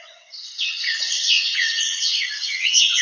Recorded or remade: remade